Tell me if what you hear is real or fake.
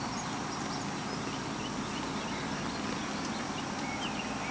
real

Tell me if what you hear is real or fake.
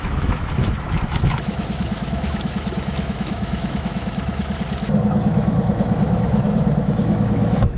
fake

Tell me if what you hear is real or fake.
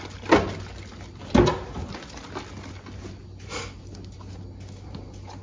real